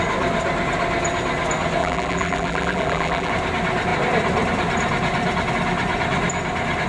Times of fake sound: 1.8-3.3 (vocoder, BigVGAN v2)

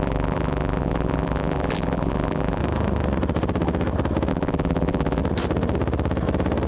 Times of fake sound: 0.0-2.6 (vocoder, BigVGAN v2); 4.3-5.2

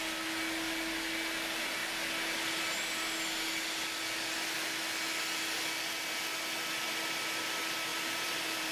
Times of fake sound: 7.9-8.7 (vocoder, BigVGAN v2)

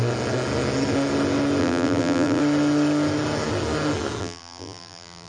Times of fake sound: 1.6-2.4 (vocoder, BigVGAN v2); 4.2-5.3

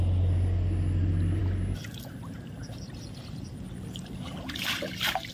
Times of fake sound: none

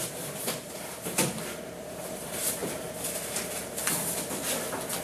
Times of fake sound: 0.0-2.6 (vocoder, BigVGAN v2); 3.1-3.8